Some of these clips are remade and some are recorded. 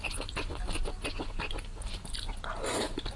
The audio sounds recorded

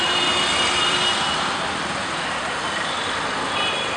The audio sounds remade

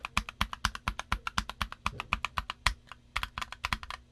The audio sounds recorded